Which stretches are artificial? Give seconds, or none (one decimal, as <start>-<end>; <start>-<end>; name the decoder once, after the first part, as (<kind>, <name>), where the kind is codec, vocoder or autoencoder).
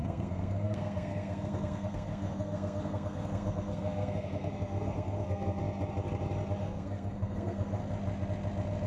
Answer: 0.0-5.6 (codec, SNAC); 6.6-7.8